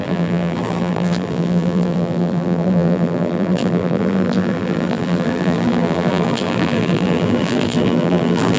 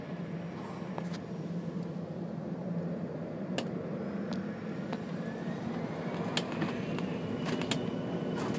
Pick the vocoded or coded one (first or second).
first